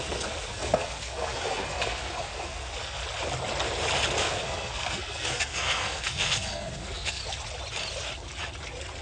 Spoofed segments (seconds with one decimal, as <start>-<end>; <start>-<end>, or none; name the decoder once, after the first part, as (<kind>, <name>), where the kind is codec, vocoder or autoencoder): 0.0-3.0 (codec, SNAC); 4.2-7.2